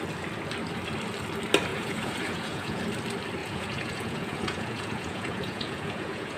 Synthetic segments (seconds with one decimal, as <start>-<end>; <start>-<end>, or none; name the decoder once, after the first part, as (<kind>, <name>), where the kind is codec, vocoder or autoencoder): 1.7-2.8 (vocoder, Vocos); 3.4-6.4